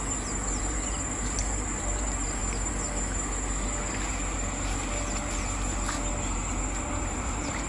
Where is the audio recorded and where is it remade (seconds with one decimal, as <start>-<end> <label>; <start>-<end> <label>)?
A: 0.0-0.6 recorded; 0.6-2.4 remade; 2.4-7.0 recorded; 7.0-7.7 remade